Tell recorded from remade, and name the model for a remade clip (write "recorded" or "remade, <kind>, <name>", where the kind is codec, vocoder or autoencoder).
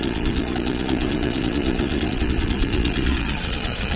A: remade, vocoder, Vocos